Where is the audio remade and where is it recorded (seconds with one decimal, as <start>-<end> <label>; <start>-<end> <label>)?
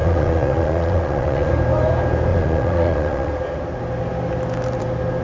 0.0-1.5 remade; 1.5-2.3 recorded; 2.3-3.3 remade; 3.3-5.2 recorded